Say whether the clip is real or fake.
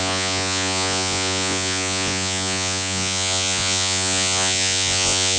fake